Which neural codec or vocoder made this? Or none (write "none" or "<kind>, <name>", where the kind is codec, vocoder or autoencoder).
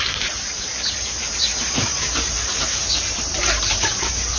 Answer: vocoder, BigVGAN v2